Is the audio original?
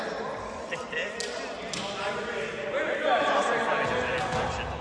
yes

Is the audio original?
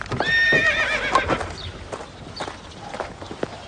yes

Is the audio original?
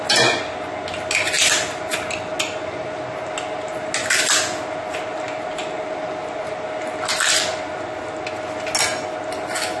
yes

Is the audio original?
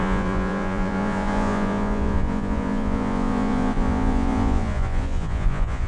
no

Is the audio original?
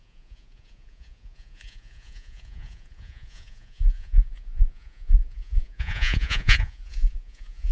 no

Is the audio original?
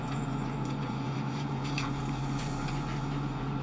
no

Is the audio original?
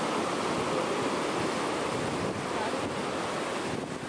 yes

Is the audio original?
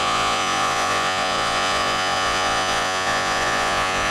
no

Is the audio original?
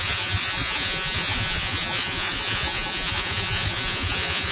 no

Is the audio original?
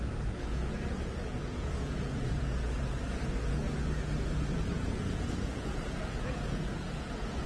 no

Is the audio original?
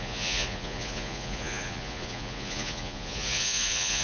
no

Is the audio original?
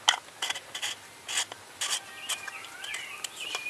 yes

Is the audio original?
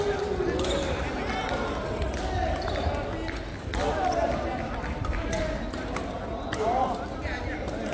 yes